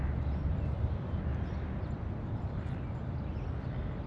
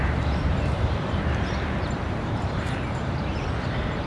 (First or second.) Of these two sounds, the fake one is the second